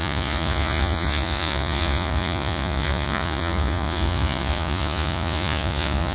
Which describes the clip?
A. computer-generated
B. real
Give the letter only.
A